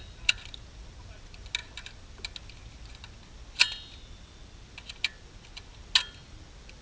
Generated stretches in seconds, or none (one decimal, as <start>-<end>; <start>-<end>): none